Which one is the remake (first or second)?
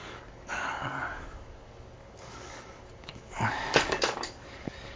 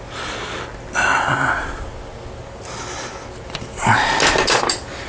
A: first